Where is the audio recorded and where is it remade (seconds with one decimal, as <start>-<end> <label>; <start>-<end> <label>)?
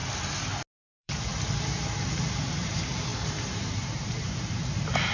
0.0-0.8 recorded; 0.8-1.3 remade; 1.3-2.4 recorded; 2.4-5.1 remade